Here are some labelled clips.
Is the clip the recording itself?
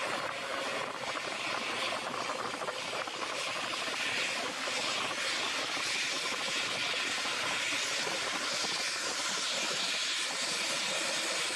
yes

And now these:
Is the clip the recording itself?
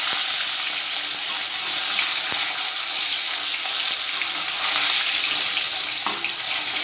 yes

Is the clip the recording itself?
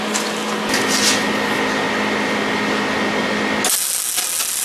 yes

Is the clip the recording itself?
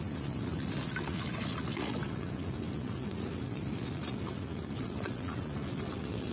no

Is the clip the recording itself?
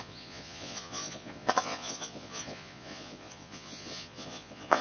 no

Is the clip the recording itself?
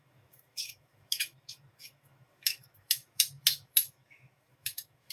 no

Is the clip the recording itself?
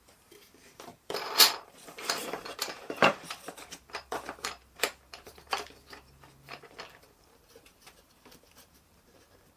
no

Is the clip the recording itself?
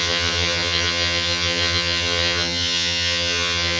no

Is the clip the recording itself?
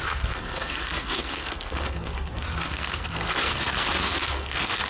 no